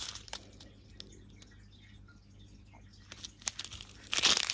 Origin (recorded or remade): recorded